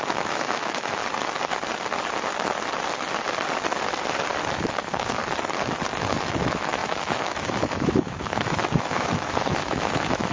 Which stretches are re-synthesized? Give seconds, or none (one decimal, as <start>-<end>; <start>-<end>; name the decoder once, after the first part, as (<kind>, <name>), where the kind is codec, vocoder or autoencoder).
0.0-1.0 (autoencoder, DAC-VAE); 4.6-5.2; 5.9-10.3